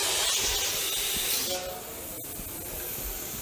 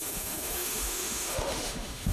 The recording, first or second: first